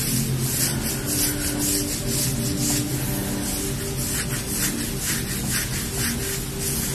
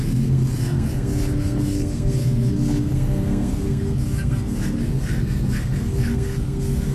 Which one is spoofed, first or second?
second